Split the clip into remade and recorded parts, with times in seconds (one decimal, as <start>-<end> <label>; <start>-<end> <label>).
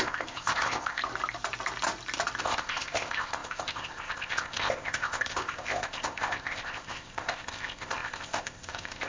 0.0-1.0 remade; 1.0-2.4 recorded; 2.4-9.1 remade